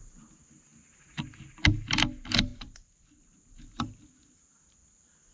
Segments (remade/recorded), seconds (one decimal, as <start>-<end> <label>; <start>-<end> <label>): 0.0-2.5 recorded; 2.5-3.2 remade; 3.2-5.3 recorded